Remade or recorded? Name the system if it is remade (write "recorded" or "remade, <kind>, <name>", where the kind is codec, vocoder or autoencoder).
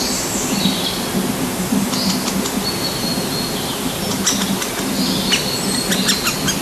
recorded